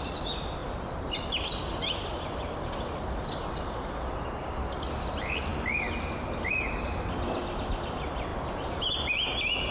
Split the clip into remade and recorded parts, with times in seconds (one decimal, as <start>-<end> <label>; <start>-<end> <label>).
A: 0.0-9.7 recorded